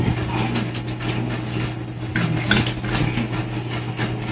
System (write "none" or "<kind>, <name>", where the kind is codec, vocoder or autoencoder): none